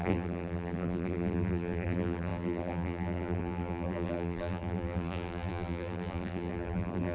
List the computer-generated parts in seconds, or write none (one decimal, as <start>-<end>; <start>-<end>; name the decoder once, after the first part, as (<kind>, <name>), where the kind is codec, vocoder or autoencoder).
0.0-7.1 (vocoder, BigVGAN v2)